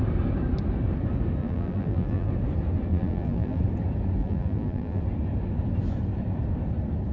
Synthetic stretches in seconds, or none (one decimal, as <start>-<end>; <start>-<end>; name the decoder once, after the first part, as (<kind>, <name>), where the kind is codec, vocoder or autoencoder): 1.4-2.3 (vocoder, BigVGAN v2); 2.9-3.6; 4.2-5.0